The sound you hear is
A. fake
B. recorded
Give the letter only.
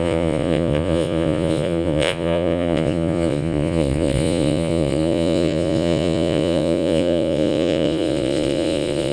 A